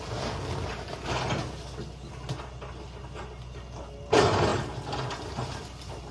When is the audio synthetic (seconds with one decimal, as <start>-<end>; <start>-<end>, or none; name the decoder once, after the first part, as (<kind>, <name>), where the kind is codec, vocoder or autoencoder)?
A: none